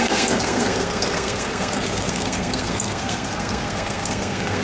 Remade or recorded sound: remade